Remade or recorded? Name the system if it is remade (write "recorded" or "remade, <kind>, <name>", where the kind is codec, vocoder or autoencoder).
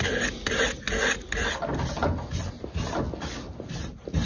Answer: recorded